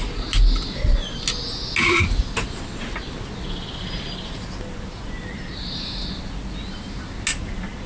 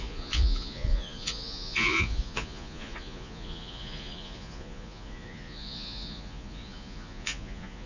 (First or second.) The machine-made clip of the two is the second